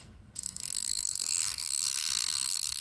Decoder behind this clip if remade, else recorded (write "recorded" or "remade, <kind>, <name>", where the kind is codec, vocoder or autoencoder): remade, codec, SNAC